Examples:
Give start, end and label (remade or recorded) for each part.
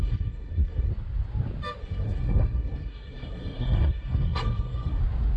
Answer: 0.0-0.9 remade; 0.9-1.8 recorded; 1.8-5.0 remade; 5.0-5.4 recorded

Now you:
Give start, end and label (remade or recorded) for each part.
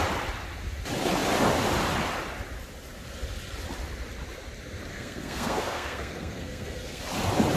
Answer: 0.0-4.9 recorded; 4.9-7.0 remade; 7.0-7.6 recorded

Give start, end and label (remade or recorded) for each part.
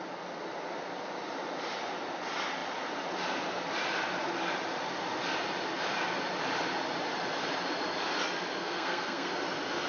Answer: 0.0-8.6 recorded; 8.6-9.3 remade; 9.3-9.9 recorded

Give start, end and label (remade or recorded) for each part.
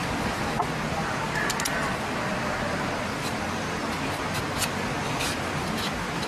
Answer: 0.0-6.3 recorded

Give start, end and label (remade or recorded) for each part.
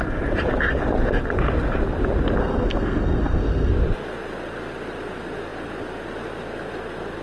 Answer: 0.0-2.4 recorded; 2.4-3.7 remade; 3.7-7.2 recorded